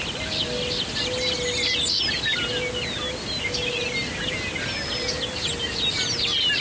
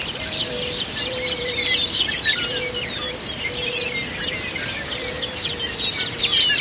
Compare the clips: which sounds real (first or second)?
first